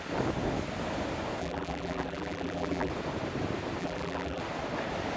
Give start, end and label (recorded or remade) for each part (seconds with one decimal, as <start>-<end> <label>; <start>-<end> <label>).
0.0-1.4 recorded; 1.4-2.9 remade; 2.9-3.8 recorded; 3.8-4.4 remade; 4.4-5.2 recorded

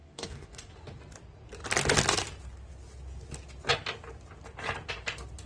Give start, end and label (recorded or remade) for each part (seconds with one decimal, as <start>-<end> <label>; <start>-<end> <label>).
0.0-0.7 remade; 0.7-5.5 recorded